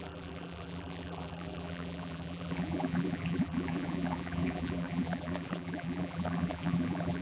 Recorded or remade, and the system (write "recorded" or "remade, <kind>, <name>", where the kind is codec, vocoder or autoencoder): remade, vocoder, BigVGAN v2